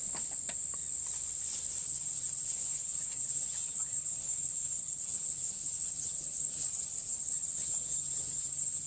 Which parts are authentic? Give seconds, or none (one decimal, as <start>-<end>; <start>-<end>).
0.0-1.8